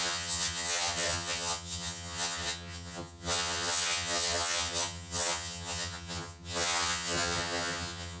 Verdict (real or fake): fake